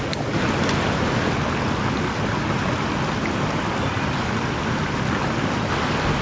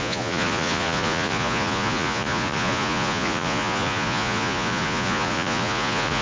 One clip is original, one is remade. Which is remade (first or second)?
second